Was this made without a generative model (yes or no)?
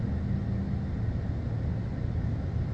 yes